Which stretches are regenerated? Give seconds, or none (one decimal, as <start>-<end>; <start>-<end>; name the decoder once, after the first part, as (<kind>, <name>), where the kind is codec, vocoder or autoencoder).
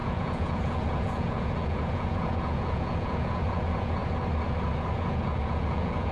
0.0-4.0 (vocoder, Vocos); 4.9-6.1